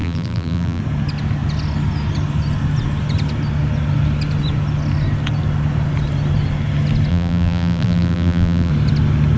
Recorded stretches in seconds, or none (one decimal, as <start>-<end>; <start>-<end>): 0.8-7.1; 8.7-9.4